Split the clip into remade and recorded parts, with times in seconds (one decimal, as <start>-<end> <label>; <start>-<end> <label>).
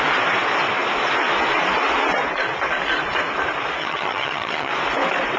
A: 0.0-3.8 recorded; 3.8-4.7 remade; 4.7-5.4 recorded